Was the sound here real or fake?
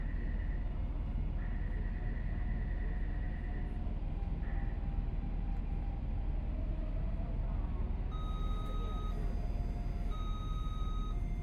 real